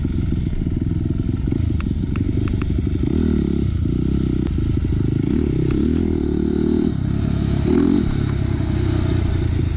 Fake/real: real